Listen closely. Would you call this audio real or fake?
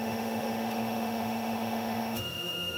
fake